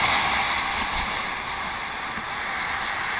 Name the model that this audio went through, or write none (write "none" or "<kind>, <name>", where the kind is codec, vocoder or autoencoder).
none